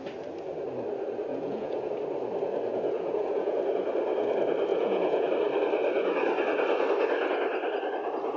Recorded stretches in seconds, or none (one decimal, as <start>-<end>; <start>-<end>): 0.0-1.3; 1.9-2.7; 3.6-4.7; 5.3-8.4